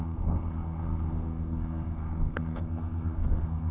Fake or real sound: fake